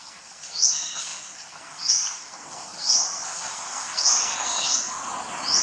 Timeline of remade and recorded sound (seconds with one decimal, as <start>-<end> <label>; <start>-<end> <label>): 0.0-5.0 remade; 5.0-5.6 recorded